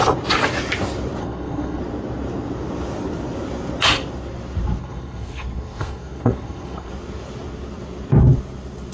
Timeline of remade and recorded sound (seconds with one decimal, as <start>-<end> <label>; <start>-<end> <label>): 0.0-1.2 recorded; 1.2-1.8 remade; 1.8-4.8 recorded; 4.8-6.9 remade; 6.9-8.9 recorded